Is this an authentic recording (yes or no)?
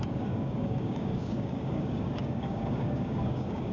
no